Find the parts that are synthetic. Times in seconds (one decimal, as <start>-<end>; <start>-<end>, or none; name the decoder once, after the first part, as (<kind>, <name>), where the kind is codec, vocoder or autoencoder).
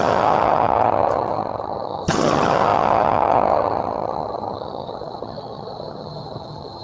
0.0-6.8 (vocoder, HiFi-GAN)